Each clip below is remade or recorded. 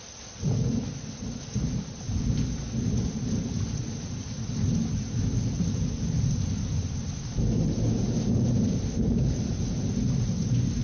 recorded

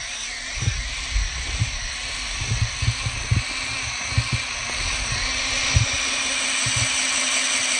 recorded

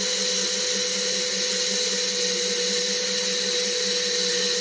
recorded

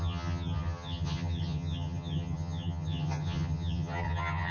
remade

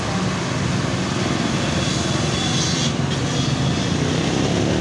recorded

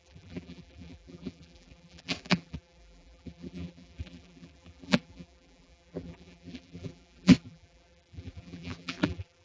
remade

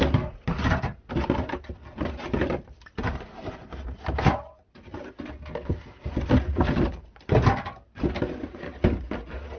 recorded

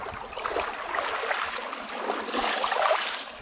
recorded